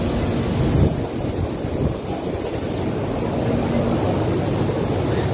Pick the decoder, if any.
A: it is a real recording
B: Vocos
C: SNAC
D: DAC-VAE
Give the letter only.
A